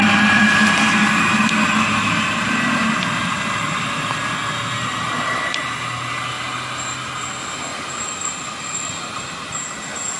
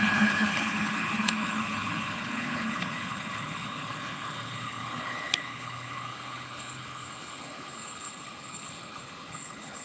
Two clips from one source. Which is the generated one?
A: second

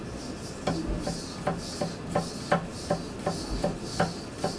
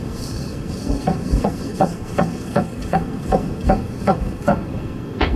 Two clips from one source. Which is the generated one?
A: second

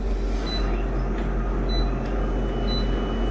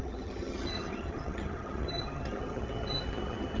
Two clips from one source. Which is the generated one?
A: second